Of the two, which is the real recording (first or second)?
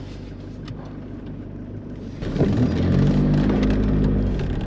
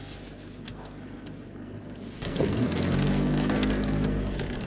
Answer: first